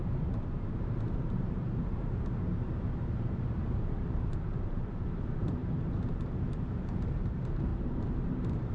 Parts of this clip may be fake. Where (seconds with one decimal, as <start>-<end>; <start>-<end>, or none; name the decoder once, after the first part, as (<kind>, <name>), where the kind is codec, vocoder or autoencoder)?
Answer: 0.0-5.6 (vocoder, BigVGAN v2); 6.5-8.7